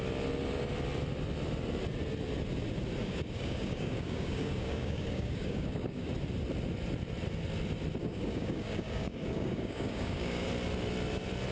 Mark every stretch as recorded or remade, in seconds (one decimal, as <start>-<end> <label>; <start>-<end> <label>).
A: 0.0-3.0 recorded; 3.0-6.1 remade; 6.1-8.0 recorded; 8.0-10.5 remade; 10.5-11.5 recorded